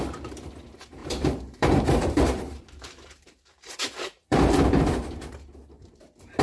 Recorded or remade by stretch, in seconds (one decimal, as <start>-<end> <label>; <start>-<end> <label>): 0.0-1.0 recorded; 1.0-4.8 remade; 4.8-6.4 recorded